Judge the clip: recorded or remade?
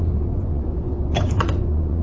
remade